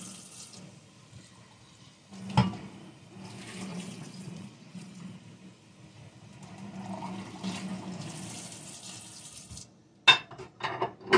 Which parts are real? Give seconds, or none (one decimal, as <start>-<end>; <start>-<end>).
0.0-3.7; 5.2-11.2